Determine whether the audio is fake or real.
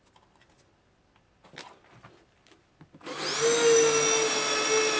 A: real